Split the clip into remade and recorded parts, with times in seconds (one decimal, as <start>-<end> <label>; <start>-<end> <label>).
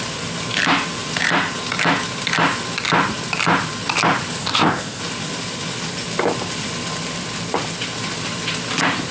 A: 0.0-4.4 recorded; 4.4-5.0 remade; 5.0-9.1 recorded